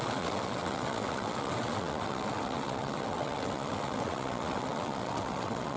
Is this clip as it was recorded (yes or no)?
no